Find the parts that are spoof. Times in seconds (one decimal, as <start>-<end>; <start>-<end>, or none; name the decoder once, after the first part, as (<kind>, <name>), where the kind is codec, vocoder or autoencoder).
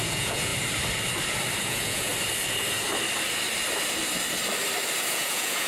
0.0-0.5 (vocoder, Vocos); 1.6-2.1; 5.1-5.7